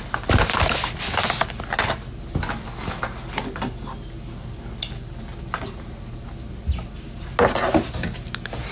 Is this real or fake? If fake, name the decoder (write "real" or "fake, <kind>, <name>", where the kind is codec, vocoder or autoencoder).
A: real